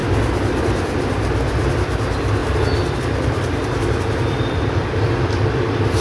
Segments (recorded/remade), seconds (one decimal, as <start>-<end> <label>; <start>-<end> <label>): 0.0-1.5 remade; 1.5-2.4 recorded; 2.4-6.0 remade